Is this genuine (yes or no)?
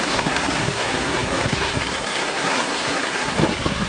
no